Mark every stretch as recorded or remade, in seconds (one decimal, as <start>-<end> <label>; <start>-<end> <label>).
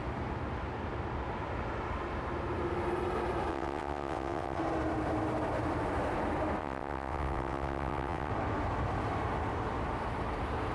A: 0.0-3.5 recorded; 3.5-4.6 remade; 4.6-6.6 recorded; 6.6-8.3 remade; 8.3-10.7 recorded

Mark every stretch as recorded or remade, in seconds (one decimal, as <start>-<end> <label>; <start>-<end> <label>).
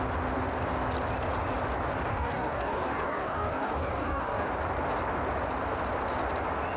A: 0.0-2.1 recorded; 2.1-4.5 remade; 4.5-6.8 recorded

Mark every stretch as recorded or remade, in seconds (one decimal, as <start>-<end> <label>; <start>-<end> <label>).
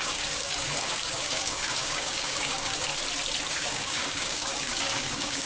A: 0.0-2.9 remade; 2.9-3.5 recorded; 3.5-5.5 remade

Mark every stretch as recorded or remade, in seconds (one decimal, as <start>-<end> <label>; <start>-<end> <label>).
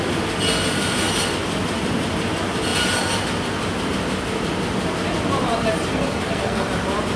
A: 0.0-5.9 recorded; 5.9-6.7 remade; 6.7-7.2 recorded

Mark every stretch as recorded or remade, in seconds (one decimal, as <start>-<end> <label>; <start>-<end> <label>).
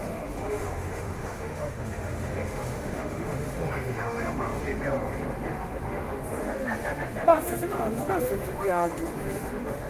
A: 0.0-9.9 remade